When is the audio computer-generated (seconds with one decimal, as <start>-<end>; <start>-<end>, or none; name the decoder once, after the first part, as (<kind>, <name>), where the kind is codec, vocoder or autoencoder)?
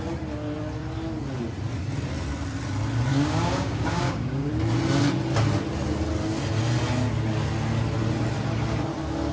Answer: 3.1-4.5 (codec, DAC)